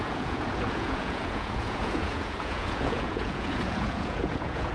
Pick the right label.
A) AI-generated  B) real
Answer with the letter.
A